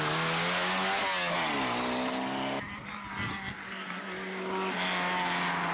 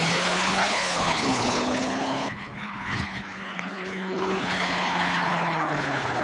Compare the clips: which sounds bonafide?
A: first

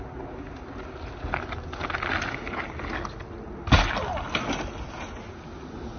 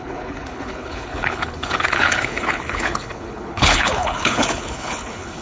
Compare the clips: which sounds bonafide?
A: first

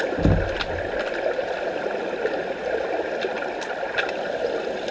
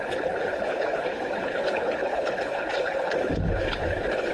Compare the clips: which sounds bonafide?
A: first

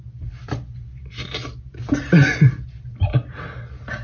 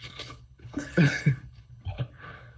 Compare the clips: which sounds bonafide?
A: first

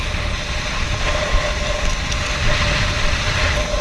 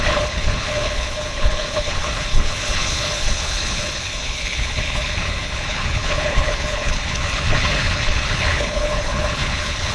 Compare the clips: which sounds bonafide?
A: first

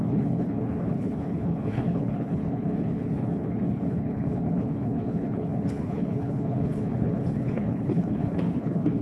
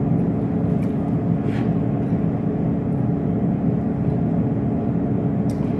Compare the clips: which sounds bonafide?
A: second